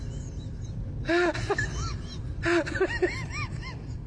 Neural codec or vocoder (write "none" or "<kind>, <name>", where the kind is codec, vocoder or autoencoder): none